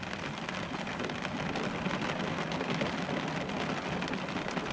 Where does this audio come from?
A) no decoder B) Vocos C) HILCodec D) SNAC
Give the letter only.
A